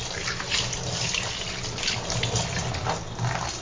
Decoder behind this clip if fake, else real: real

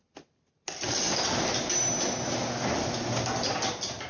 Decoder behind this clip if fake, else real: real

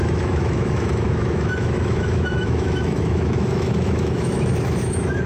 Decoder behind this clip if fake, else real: fake, autoencoder, DAC-VAE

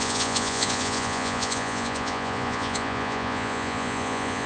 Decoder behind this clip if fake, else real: fake, vocoder, Vocos